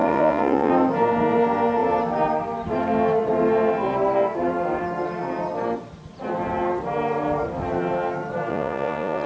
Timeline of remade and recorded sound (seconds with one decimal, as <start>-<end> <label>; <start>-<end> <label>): 0.0-0.7 remade; 0.7-8.5 recorded; 8.5-9.3 remade